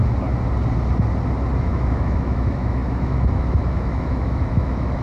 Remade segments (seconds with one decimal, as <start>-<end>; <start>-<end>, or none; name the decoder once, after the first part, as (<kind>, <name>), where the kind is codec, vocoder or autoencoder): 1.6-5.0 (autoencoder, DAC-VAE)